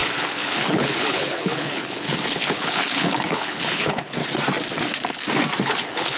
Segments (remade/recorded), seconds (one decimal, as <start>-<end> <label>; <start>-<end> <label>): 0.0-4.2 remade; 4.2-5.6 recorded; 5.6-6.2 remade